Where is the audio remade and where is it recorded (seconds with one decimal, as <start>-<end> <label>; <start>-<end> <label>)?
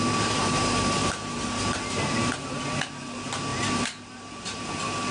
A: 0.0-1.0 recorded; 1.0-2.6 remade; 2.6-3.5 recorded; 3.5-4.6 remade; 4.6-5.1 recorded